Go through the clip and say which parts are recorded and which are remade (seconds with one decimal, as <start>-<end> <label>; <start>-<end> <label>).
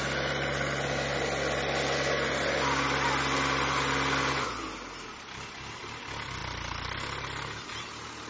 0.0-8.3 recorded